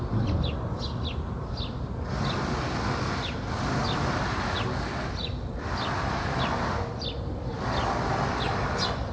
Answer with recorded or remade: recorded